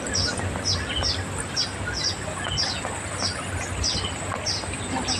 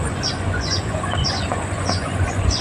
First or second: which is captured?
first